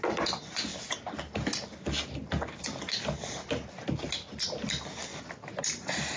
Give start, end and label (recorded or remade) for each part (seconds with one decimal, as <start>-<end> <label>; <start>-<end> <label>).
0.0-6.2 recorded